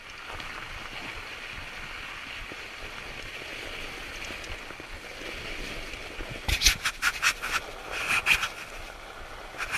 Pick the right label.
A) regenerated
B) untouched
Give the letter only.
B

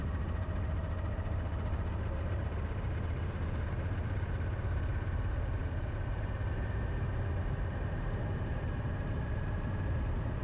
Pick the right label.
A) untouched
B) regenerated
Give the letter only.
A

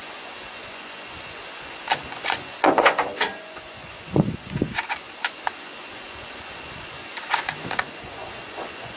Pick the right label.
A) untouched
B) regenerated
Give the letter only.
B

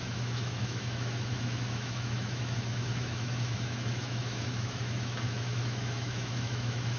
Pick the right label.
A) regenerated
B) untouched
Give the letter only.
A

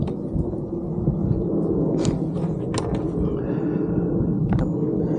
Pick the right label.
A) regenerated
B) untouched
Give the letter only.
B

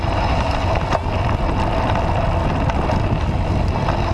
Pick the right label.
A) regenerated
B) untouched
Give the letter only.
B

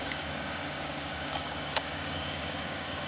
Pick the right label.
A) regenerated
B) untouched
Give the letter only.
A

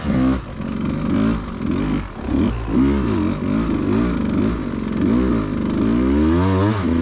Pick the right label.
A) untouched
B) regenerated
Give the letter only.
A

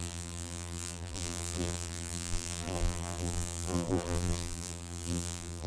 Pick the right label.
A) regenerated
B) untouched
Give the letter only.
A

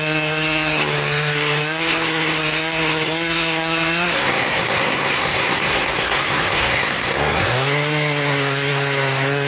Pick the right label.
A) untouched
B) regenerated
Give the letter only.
B